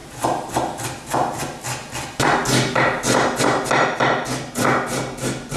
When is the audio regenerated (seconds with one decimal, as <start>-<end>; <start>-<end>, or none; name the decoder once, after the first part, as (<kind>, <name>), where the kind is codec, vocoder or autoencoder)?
none